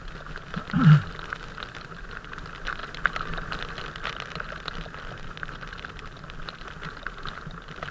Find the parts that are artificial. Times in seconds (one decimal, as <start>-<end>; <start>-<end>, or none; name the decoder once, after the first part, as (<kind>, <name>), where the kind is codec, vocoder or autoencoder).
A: none